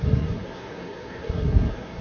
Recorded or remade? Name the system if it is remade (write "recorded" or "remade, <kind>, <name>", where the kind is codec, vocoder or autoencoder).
remade, codec, SNAC